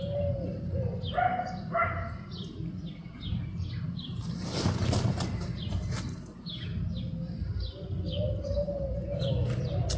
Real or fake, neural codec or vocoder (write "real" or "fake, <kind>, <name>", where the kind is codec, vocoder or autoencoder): real